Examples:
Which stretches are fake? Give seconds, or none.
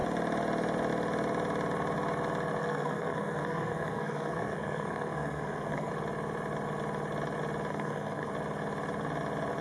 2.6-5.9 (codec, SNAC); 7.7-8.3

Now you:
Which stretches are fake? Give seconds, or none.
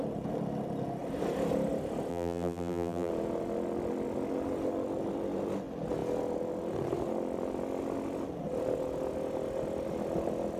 2.1-3.1 (vocoder, BigVGAN v2)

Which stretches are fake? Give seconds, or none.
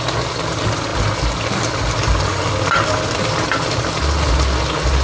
none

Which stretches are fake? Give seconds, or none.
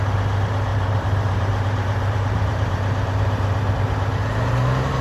0.7-3.7 (vocoder, BigVGAN v2)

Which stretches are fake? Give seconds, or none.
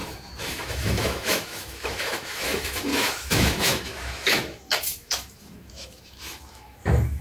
0.0-7.2 (autoencoder, DAC-VAE)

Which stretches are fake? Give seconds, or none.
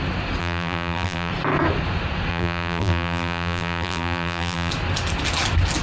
0.4-1.3 (vocoder, BigVGAN v2); 2.3-4.7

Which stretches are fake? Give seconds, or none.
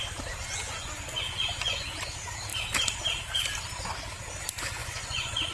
0.4-2.0 (vocoder, Vocos); 4.8-5.5